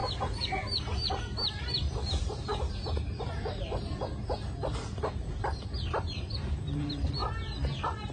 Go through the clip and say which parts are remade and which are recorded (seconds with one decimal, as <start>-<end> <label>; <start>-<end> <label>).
0.0-0.8 recorded; 0.8-8.1 remade